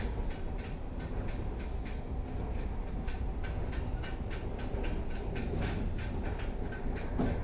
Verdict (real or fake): real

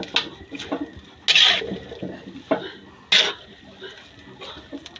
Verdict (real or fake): real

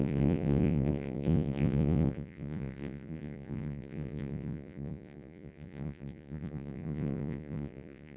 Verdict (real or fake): fake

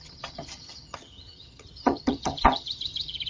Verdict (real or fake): fake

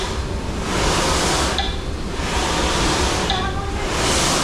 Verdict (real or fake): real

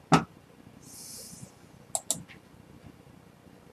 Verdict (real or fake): real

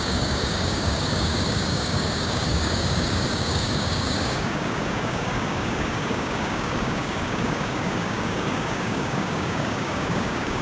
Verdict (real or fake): fake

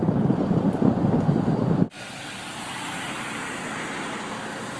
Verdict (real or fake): real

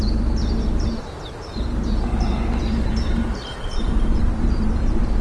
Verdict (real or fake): fake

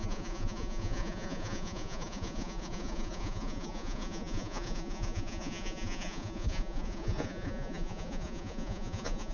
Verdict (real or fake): fake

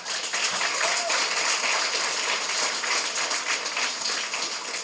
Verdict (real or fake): real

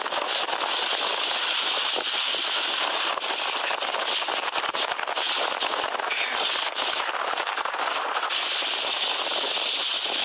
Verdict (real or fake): real